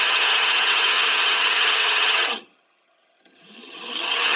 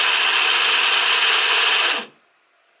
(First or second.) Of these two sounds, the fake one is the first